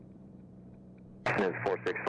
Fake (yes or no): yes